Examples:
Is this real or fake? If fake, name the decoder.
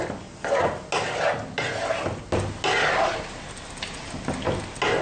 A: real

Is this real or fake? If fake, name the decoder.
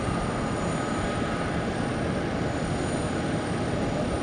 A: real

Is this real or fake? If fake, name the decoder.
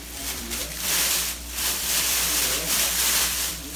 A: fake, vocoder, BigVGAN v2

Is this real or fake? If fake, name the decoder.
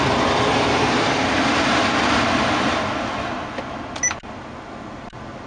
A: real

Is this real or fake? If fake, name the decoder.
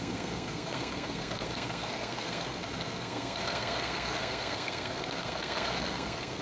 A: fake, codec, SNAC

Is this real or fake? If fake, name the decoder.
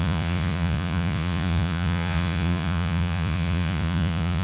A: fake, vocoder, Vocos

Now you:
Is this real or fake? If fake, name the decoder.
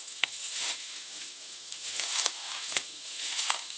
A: fake, autoencoder, DAC-VAE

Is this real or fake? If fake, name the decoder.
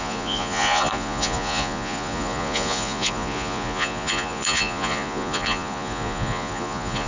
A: fake, vocoder, Vocos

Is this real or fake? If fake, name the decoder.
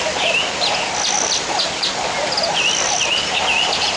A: real